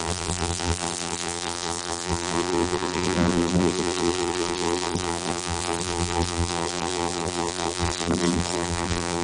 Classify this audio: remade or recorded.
remade